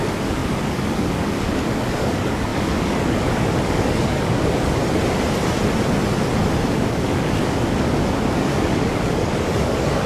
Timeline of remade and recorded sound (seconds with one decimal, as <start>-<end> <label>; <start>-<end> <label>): 0.0-4.8 remade; 4.8-6.7 recorded; 6.7-10.1 remade